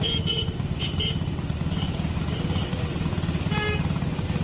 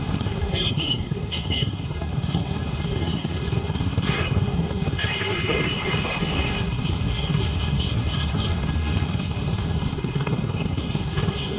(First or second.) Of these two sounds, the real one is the first